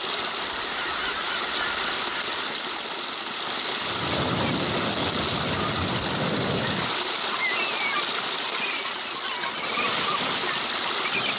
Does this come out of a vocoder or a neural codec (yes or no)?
no